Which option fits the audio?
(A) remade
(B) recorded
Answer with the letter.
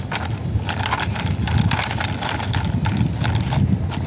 B